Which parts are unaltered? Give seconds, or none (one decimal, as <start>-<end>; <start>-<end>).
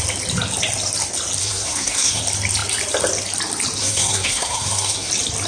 0.0-1.4; 2.2-3.8; 5.1-5.5